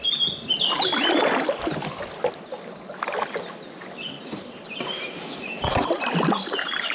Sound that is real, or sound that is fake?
real